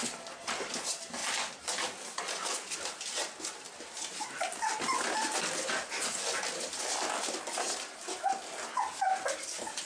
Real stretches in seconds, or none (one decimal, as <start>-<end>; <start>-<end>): 0.0-9.8